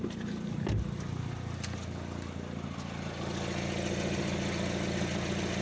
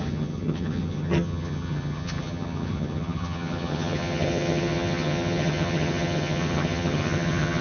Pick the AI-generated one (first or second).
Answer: second